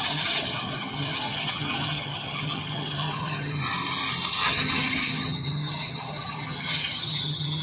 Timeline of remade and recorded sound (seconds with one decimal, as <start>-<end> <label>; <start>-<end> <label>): 0.0-3.6 remade; 3.6-4.3 recorded; 4.3-7.6 remade